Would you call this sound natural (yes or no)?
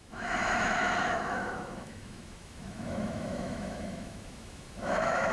no